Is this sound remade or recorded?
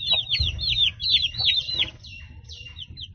recorded